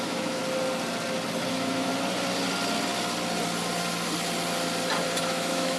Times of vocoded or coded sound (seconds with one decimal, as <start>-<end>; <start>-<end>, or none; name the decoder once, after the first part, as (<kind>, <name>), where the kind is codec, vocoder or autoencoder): 0.0-0.4 (autoencoder, DAC-VAE); 1.5-1.9; 5.2-5.8